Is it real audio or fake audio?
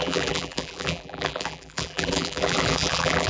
fake